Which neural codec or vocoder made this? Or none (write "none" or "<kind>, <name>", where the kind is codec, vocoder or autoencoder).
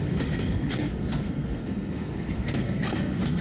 codec, SNAC